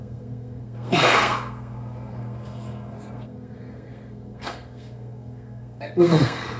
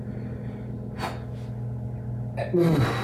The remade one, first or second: first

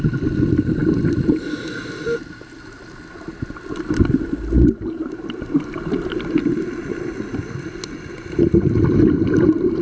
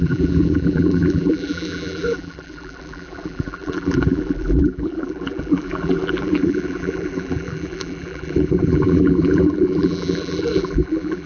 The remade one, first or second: second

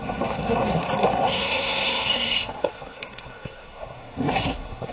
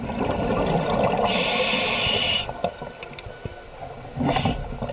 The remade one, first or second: first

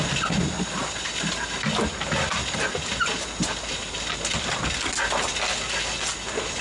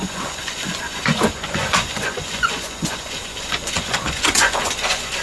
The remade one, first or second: second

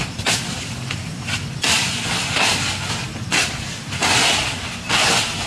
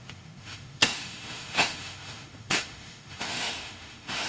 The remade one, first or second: second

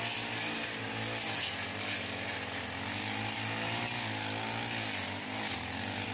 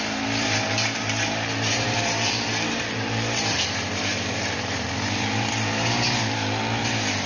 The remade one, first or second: second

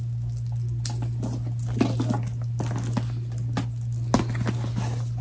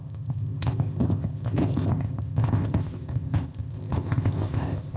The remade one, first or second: second